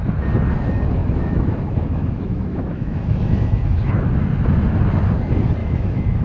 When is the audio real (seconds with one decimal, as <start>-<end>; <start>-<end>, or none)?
0.0-1.0; 3.9-5.6